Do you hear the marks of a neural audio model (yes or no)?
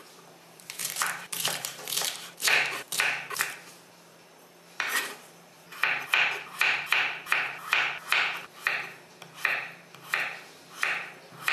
yes